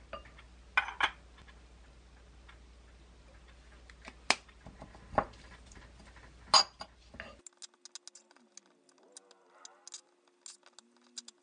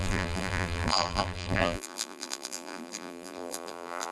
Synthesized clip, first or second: second